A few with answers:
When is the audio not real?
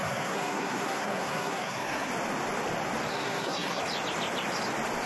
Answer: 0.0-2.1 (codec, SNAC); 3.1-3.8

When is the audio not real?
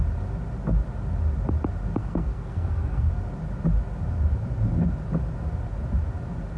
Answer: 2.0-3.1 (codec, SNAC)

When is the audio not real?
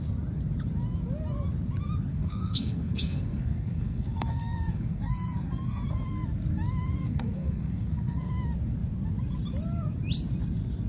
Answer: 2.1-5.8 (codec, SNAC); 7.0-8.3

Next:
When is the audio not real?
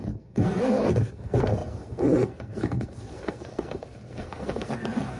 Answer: 0.0-5.2 (codec, SNAC)